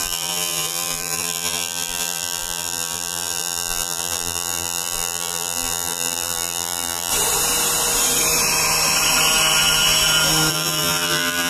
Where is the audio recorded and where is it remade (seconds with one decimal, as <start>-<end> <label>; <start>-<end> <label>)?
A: 0.0-7.1 remade; 7.1-10.5 recorded; 10.5-11.5 remade